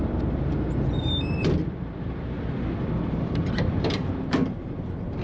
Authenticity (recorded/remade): remade